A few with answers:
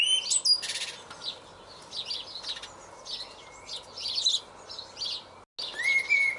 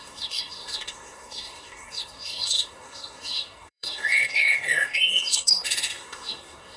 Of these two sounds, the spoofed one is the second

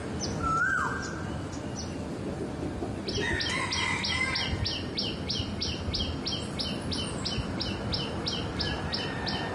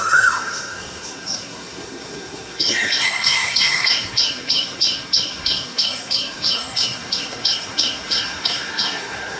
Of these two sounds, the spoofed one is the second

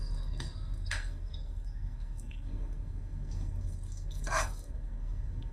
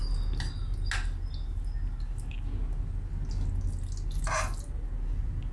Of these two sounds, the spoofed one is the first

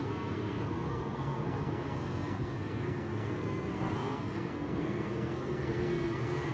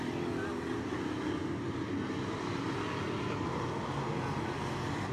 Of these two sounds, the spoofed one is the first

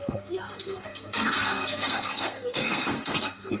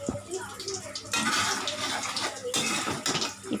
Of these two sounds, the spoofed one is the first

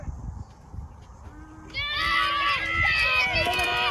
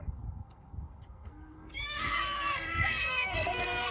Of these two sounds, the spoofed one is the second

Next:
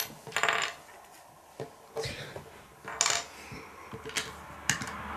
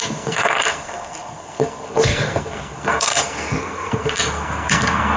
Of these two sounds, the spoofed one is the second